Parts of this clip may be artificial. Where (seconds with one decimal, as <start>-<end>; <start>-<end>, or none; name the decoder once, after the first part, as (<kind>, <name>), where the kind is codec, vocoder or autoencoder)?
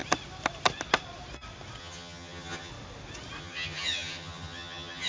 1.8-2.7 (vocoder, HiFi-GAN); 3.4-5.1